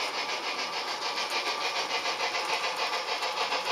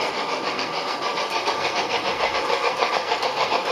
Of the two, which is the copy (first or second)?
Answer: second